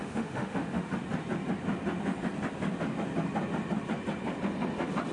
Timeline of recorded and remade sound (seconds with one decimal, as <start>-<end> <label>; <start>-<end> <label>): 0.0-0.9 remade; 0.9-5.1 recorded